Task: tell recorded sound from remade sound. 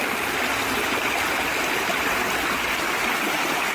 recorded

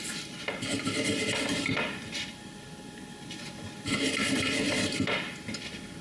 recorded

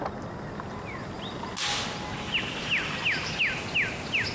recorded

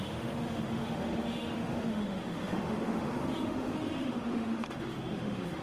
remade